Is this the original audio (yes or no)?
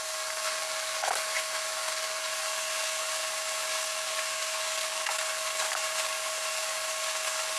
no